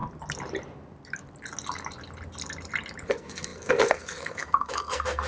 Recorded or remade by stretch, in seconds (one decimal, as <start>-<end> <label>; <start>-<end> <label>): 0.0-3.1 recorded; 3.1-5.3 remade